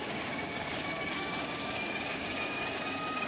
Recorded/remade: remade